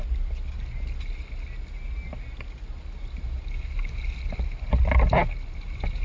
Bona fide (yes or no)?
yes